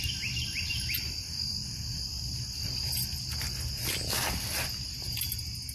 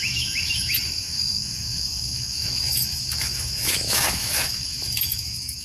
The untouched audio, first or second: first